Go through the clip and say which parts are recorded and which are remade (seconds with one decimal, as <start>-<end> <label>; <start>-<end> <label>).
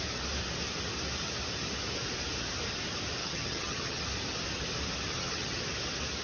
0.0-3.2 recorded; 3.2-4.0 remade; 4.0-5.1 recorded; 5.1-5.6 remade; 5.6-6.2 recorded